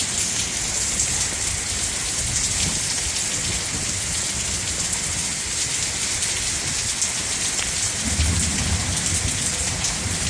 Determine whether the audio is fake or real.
real